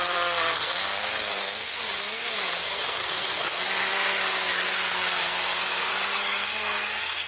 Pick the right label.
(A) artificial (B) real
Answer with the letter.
A